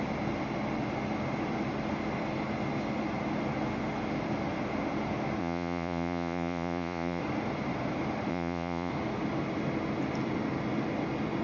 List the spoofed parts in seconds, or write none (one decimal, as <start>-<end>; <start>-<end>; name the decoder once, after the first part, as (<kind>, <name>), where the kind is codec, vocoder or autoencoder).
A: 5.4-7.2 (vocoder, Vocos); 8.3-8.9